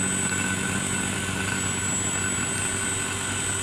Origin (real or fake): real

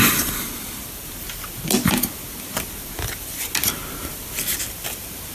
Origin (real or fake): real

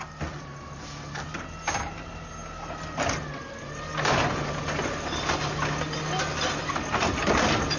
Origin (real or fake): real